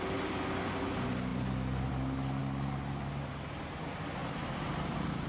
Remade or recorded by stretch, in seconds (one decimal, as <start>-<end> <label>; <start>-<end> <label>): 0.0-5.3 recorded